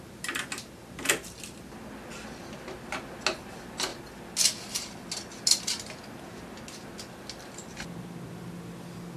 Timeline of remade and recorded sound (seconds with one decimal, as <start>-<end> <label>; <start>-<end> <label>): 0.0-9.2 recorded